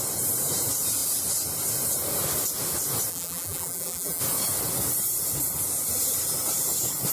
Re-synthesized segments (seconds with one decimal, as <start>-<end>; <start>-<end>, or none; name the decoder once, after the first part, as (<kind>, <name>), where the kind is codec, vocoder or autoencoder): 3.1-4.2 (vocoder, BigVGAN v2)